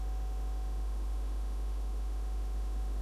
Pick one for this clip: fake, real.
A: fake